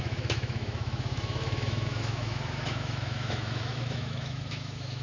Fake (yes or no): yes